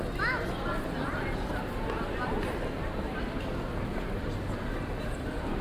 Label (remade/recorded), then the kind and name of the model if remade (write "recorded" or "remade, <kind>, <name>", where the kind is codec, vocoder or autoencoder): recorded